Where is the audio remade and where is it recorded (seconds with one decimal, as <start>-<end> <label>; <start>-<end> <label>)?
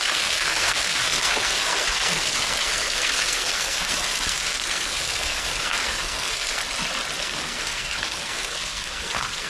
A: 0.0-6.6 remade; 6.6-7.2 recorded; 7.2-9.5 remade